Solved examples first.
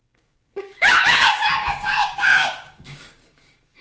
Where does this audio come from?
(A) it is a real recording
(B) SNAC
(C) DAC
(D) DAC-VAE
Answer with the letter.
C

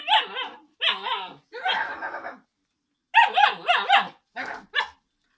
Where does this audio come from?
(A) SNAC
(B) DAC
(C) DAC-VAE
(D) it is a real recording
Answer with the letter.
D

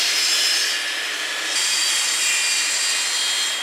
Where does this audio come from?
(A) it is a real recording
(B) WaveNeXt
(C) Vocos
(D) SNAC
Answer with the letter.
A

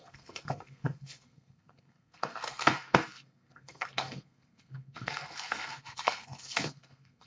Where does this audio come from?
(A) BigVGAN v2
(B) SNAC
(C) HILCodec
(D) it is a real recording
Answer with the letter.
B